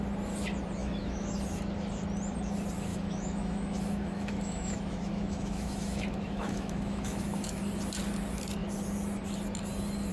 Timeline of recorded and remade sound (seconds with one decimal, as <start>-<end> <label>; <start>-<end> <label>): 0.0-0.8 recorded; 0.8-1.3 remade; 1.3-2.9 recorded; 2.9-7.6 remade; 7.6-10.1 recorded